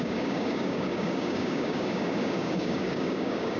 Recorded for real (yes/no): no